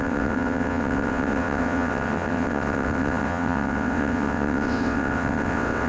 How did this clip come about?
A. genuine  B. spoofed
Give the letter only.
B